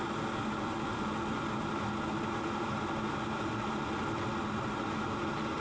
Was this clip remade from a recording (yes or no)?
no